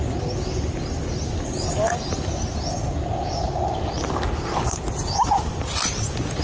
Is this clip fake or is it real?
real